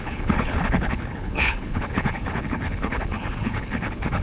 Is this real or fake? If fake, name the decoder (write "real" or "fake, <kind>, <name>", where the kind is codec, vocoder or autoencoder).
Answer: fake, codec, HILCodec